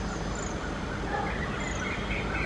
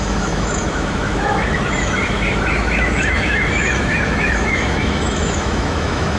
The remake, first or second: second